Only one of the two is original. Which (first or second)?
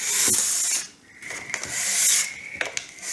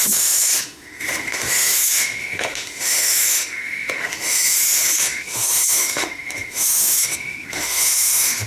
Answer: first